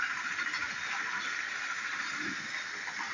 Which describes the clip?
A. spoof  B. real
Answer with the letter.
B